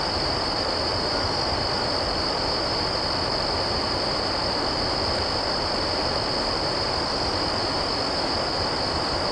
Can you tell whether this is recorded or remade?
recorded